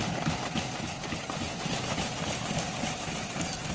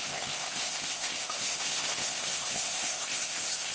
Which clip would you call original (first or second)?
first